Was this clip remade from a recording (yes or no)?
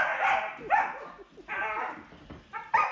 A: no